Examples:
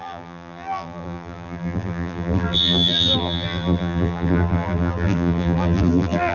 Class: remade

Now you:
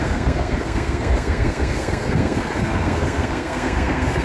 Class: remade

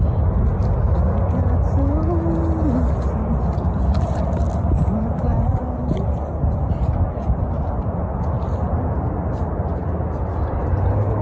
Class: recorded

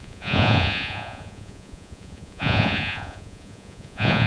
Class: remade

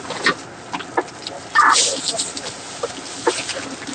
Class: recorded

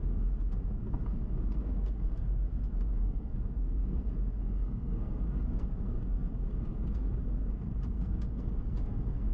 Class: remade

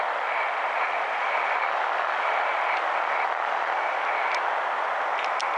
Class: recorded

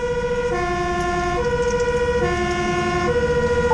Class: recorded